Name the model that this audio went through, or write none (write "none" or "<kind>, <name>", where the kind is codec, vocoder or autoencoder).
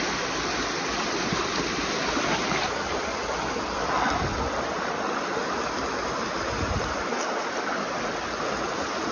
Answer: none